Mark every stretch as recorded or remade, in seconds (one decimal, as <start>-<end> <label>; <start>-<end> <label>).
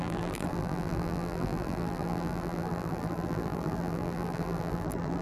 0.0-5.2 remade